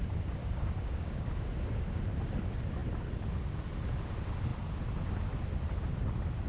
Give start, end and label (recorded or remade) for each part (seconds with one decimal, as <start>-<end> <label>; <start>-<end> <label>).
0.0-0.4 recorded; 0.4-2.0 remade; 2.0-6.5 recorded